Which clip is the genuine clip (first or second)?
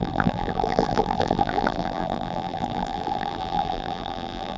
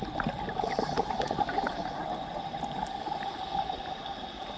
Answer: second